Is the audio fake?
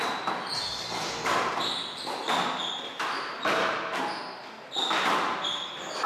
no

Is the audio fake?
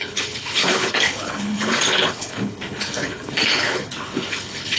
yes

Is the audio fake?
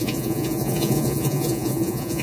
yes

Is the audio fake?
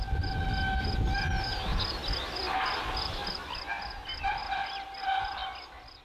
no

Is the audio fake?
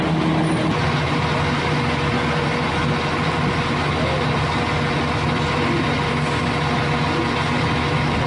no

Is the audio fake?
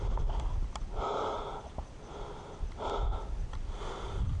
no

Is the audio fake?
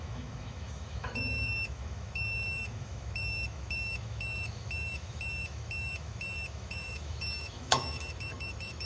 yes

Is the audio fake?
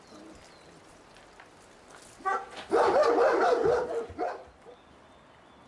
no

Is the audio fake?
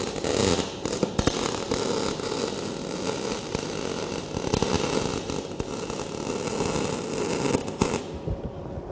no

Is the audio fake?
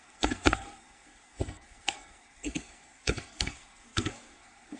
yes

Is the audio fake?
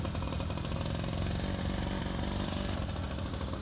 no